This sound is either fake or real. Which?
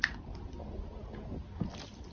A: real